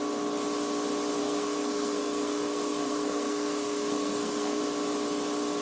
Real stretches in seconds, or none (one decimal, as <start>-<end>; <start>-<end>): 0.0-1.2; 4.6-5.6